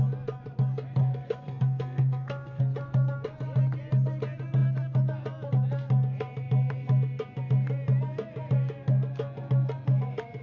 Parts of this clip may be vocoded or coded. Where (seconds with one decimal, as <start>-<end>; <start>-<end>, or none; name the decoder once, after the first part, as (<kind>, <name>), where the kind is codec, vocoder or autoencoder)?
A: 1.0-2.6 (codec, SNAC)